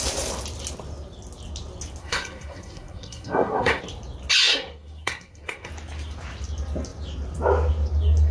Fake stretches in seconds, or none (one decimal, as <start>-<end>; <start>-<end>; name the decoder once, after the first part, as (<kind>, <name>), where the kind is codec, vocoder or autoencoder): 2.0-3.8 (codec, SNAC); 4.5-5.7